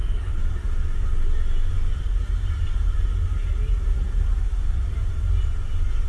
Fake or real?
real